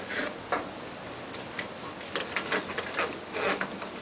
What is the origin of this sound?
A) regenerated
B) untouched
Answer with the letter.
B